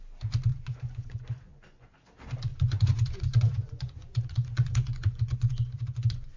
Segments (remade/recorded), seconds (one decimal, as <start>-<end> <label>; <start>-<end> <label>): 0.0-0.5 recorded; 0.5-2.0 remade; 2.0-2.5 recorded; 2.5-6.4 remade